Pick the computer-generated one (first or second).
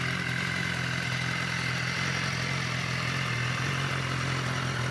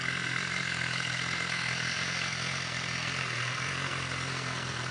second